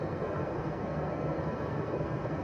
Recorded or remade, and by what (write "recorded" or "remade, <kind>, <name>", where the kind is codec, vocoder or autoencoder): remade, codec, SNAC